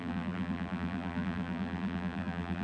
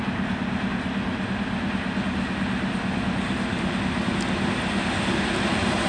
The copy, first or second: first